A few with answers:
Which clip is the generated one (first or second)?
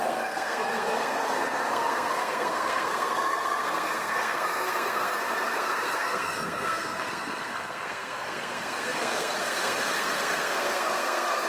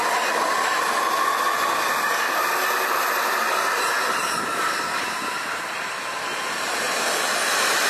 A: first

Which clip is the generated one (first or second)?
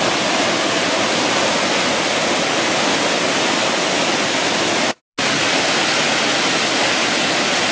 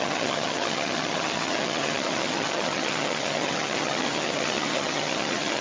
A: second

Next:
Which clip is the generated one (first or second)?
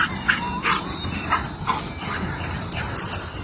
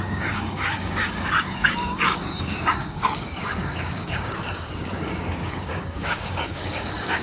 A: second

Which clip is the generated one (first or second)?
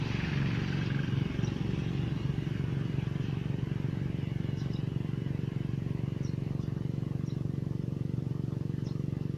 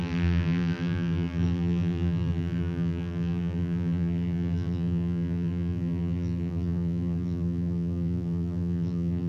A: second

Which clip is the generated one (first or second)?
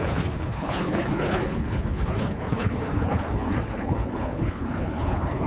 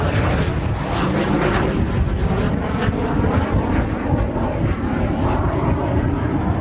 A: first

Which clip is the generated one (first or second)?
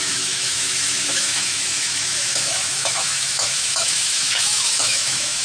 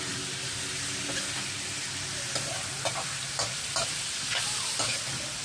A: first